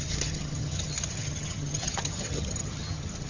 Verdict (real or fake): fake